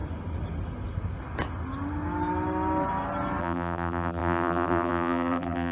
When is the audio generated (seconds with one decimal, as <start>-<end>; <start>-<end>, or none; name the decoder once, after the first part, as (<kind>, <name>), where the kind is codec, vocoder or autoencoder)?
3.4-5.7 (vocoder, BigVGAN v2)